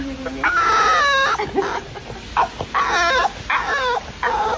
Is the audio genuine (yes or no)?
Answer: yes